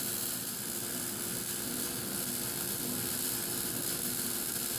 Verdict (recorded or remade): recorded